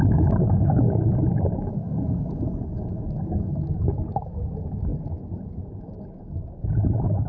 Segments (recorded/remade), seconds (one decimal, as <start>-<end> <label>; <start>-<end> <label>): 0.0-7.3 remade